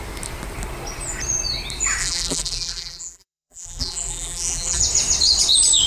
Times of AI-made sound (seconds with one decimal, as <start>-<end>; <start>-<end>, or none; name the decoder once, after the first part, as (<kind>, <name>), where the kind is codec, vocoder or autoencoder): 2.0-4.8 (vocoder, BigVGAN v2)